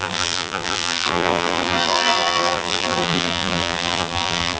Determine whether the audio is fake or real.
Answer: fake